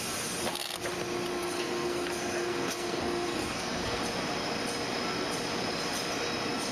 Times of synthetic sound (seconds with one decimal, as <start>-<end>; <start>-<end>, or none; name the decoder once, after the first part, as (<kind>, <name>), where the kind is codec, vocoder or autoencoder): 1.3-4.0 (codec, SNAC)